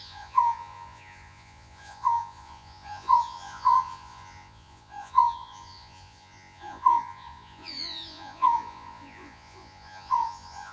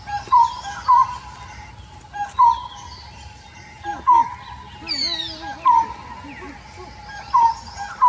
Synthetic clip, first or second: first